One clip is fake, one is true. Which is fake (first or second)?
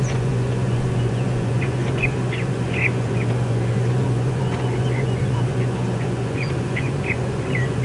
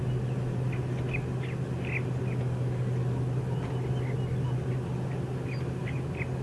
first